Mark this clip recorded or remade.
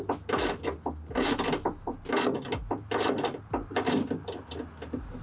recorded